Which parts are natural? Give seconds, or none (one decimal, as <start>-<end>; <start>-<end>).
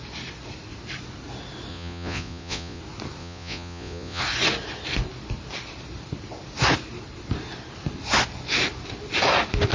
0.0-1.7; 2.8-3.2; 4.2-9.7